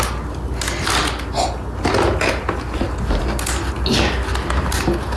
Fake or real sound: real